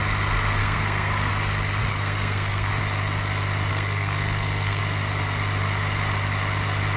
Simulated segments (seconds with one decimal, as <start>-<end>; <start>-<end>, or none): 0.6-1.3; 1.9-2.7; 3.7-4.8